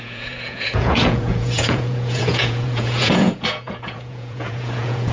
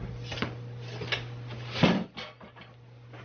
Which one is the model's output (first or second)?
first